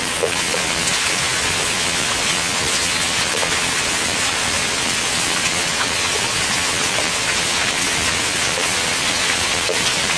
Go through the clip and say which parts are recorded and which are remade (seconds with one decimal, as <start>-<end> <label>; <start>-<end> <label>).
0.0-10.2 remade